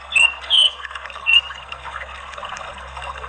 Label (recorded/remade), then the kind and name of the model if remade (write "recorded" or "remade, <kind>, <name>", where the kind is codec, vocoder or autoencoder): remade, codec, SNAC